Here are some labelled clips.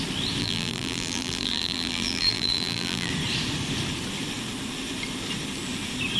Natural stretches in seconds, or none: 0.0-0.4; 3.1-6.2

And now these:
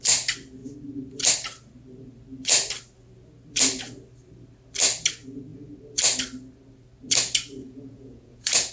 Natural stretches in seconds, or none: 0.0-7.6

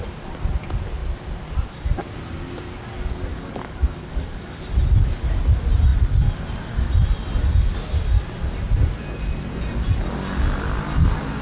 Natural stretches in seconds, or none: 0.0-3.3; 4.6-11.4

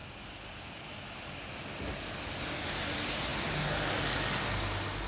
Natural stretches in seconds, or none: 0.0-5.1